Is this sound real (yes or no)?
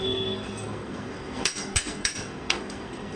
no